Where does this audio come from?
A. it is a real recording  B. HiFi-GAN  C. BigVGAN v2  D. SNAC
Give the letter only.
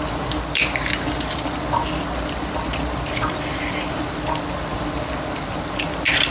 A